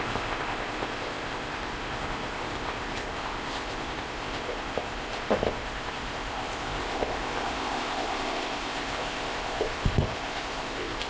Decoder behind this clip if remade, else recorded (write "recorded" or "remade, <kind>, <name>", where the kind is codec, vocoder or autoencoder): remade, codec, ZipCodec